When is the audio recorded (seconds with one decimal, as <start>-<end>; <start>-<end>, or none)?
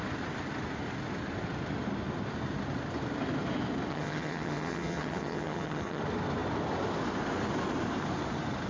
0.0-3.9; 6.0-8.7